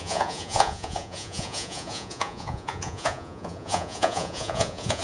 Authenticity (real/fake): fake